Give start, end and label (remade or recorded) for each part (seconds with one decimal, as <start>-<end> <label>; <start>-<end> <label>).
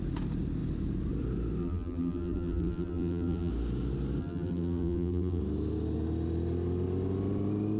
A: 0.0-1.6 recorded; 1.6-3.5 remade; 3.5-4.2 recorded; 4.2-5.4 remade; 5.4-7.8 recorded